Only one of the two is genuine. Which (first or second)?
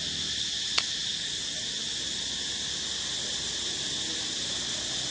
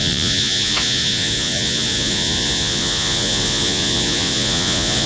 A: first